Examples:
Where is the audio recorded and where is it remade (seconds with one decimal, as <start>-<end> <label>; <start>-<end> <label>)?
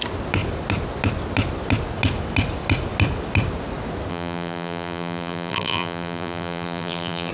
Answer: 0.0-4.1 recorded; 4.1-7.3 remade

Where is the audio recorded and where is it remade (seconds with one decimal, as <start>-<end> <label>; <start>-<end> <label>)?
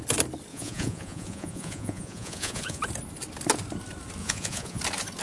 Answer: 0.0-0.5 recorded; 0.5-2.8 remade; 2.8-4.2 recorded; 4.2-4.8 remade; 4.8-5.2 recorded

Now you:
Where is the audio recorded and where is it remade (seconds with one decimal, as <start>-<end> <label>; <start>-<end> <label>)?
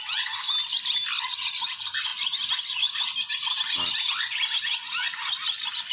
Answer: 0.0-5.9 recorded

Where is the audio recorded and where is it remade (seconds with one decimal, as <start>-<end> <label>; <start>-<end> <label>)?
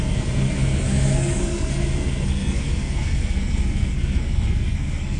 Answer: 0.0-5.2 remade